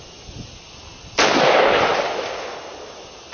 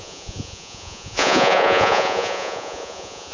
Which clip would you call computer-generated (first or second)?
second